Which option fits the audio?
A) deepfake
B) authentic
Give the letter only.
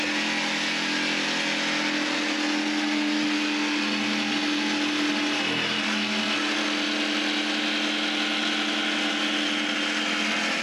B